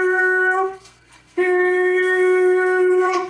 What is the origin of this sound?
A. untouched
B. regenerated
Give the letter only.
B